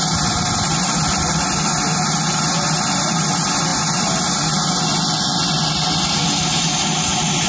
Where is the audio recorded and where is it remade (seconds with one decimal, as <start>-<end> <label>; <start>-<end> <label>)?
0.0-7.5 recorded